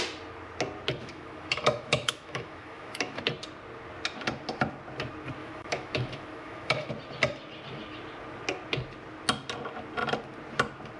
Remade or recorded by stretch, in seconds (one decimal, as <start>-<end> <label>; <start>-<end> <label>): 0.0-1.0 recorded; 1.0-3.2 remade; 3.2-5.4 recorded; 5.4-6.9 remade; 6.9-11.0 recorded

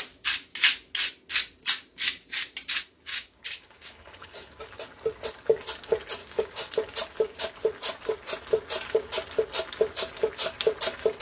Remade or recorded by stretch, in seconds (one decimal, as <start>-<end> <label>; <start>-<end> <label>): 0.0-3.1 recorded; 3.1-4.6 remade; 4.6-6.2 recorded; 6.2-6.7 remade; 6.7-11.2 recorded